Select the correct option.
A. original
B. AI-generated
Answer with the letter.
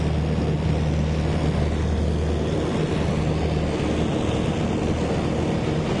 A